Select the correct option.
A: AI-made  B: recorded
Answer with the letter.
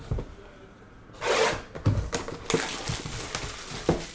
B